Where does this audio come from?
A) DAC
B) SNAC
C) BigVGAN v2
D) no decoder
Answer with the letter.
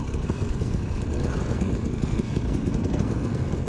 B